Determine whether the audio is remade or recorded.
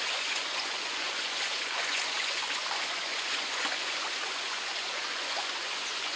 remade